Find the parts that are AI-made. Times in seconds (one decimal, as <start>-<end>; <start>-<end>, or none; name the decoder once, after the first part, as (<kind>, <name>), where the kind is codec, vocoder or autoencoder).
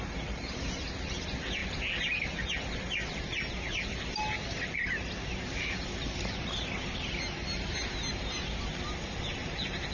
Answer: none